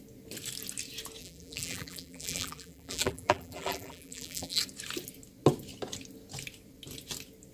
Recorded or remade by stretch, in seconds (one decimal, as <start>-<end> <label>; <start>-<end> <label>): 0.0-1.2 recorded; 1.2-4.6 remade; 4.6-7.5 recorded